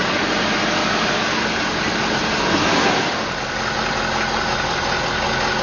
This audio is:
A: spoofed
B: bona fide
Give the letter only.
B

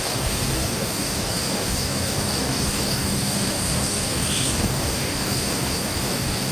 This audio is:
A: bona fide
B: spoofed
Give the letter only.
B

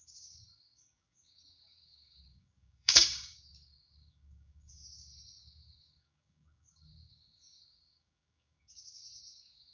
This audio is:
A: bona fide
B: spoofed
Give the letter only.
B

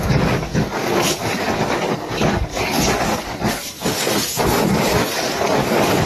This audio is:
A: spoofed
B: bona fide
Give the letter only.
A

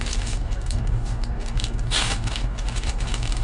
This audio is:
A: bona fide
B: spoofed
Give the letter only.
B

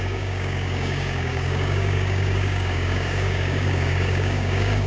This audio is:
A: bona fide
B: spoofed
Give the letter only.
B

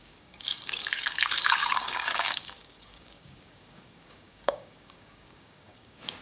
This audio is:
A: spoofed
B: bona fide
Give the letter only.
A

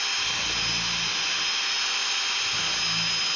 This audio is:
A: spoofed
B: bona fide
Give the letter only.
B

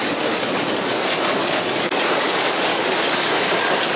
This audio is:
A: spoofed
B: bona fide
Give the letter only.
A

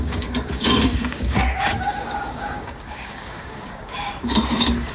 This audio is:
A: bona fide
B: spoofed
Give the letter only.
B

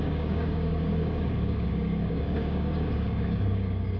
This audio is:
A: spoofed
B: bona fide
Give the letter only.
A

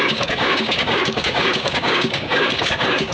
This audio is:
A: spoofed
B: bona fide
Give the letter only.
A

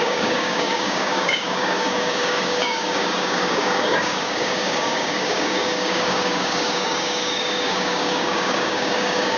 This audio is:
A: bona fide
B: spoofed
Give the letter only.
B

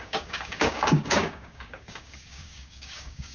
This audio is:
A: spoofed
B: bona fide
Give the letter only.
A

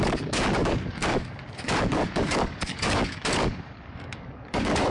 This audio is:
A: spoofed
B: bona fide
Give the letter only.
A